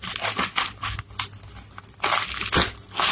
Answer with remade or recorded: recorded